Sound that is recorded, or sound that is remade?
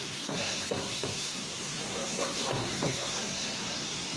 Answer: remade